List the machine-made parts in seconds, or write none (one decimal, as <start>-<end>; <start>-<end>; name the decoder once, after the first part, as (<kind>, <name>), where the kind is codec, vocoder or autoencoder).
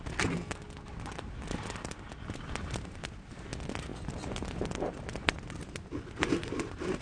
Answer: none